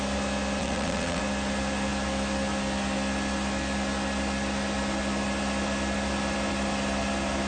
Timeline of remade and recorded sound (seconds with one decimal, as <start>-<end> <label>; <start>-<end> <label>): 0.0-0.6 recorded; 0.6-1.2 remade; 1.2-7.5 recorded